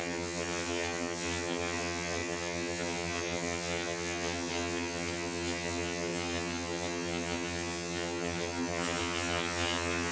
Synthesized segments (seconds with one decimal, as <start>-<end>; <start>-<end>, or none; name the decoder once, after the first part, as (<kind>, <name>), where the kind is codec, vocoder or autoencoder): 0.0-10.1 (vocoder, HiFi-GAN)